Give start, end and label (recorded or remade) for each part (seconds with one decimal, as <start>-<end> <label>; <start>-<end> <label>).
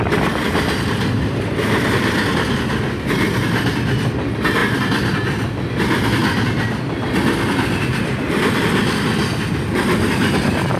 0.0-10.8 recorded